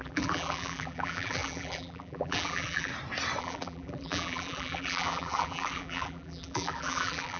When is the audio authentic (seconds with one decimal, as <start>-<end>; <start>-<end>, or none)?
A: 2.9-3.4